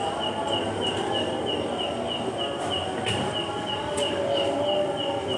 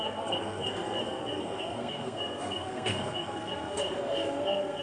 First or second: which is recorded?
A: first